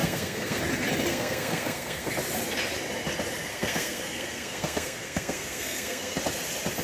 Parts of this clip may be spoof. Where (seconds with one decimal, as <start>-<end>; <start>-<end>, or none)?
0.0-0.6; 1.1-2.1; 3.5-6.2